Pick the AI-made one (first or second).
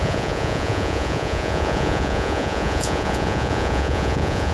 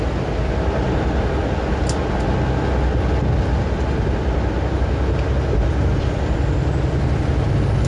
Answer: first